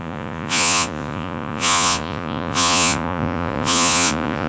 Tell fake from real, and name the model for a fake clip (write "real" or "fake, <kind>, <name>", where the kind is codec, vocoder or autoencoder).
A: fake, vocoder, Vocos